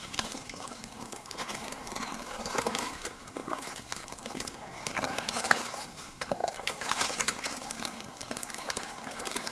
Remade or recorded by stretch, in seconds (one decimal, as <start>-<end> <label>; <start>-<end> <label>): 0.0-9.5 remade